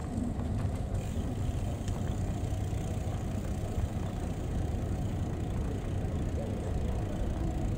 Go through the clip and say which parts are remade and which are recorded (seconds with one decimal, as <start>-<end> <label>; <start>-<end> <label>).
0.0-7.8 recorded